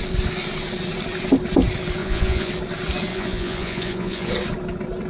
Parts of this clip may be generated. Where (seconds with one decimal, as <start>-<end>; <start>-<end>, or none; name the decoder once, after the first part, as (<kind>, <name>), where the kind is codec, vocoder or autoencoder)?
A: 2.0-2.5 (vocoder, Vocos); 3.1-4.3